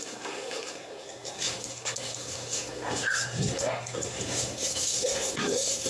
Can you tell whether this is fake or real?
fake